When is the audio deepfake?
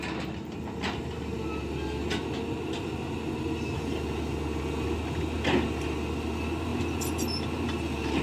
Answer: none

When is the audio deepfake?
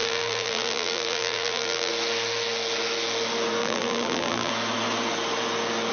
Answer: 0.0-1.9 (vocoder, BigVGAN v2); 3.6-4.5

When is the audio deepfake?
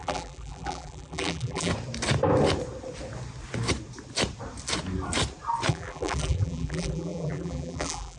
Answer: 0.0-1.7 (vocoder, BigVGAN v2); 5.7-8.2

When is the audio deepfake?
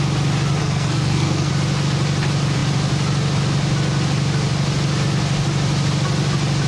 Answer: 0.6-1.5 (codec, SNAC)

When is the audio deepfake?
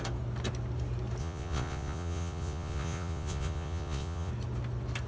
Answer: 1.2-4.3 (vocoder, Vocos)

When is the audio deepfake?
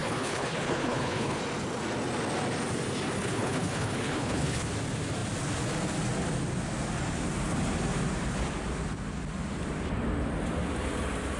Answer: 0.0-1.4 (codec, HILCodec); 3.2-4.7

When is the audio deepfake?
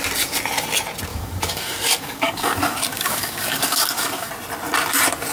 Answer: 1.1-4.3 (codec, DAC)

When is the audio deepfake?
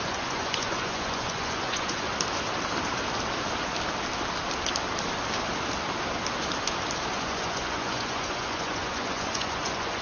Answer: 0.0-2.1 (vocoder, Vocos); 7.1-10.0